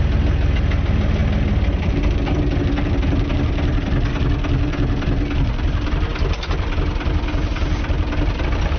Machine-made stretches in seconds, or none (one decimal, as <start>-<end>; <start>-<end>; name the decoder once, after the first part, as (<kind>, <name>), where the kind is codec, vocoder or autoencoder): none